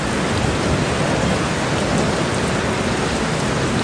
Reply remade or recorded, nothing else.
recorded